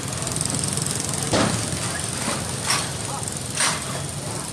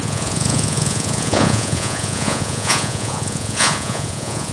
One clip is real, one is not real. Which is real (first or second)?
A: first